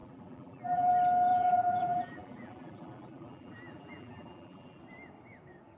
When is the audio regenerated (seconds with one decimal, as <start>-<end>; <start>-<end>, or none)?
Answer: 0.0-0.9; 1.3-4.8